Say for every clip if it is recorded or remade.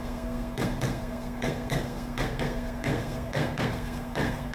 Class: remade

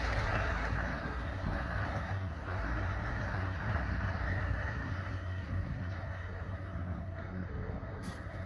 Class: remade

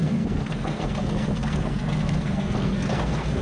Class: remade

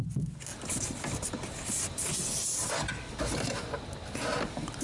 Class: recorded